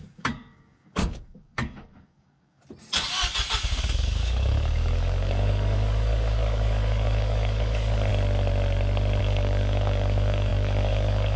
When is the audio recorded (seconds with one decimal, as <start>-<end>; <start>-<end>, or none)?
2.6-3.8; 8.1-9.2